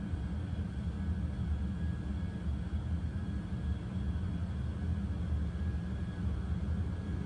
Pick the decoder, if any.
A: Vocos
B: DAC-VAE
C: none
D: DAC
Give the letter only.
C